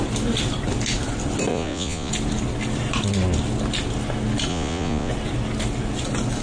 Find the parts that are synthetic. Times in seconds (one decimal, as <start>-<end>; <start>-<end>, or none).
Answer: 1.5-2.1; 4.5-5.1